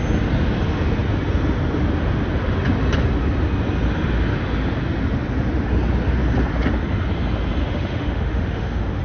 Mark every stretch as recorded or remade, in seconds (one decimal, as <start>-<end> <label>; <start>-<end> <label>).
0.0-7.6 recorded; 7.6-9.0 remade